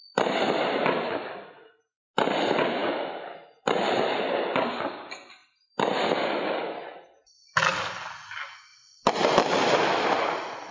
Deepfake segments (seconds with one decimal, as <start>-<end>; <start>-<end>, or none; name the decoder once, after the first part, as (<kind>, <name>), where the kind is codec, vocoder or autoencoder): none